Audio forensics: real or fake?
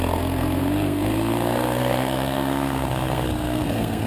fake